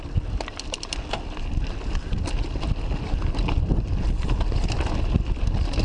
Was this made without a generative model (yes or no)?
yes